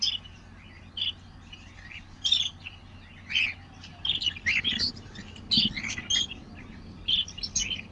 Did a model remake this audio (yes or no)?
no